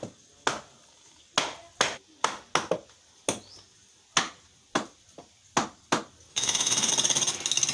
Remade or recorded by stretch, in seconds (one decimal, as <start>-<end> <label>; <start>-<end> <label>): 0.0-6.3 recorded; 6.3-6.9 remade; 6.9-7.7 recorded